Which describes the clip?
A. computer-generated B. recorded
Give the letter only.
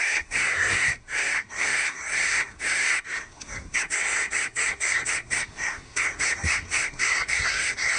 A